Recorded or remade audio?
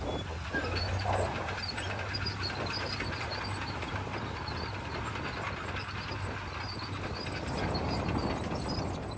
recorded